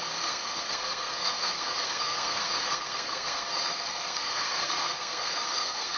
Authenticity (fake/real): fake